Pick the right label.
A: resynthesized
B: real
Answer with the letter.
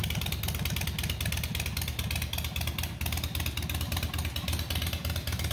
B